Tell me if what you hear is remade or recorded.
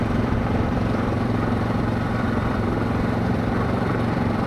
remade